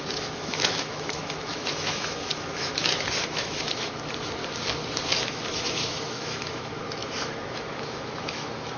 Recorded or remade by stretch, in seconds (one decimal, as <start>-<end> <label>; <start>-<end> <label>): 0.0-4.4 remade; 4.4-5.2 recorded; 5.2-8.8 remade